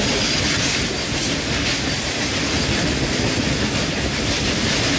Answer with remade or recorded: recorded